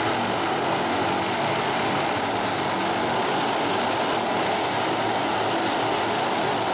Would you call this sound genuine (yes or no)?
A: yes